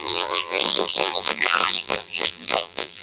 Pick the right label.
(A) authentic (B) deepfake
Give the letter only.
B